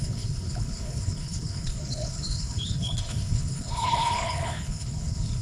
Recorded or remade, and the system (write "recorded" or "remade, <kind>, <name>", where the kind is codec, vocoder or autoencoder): remade, codec, HILCodec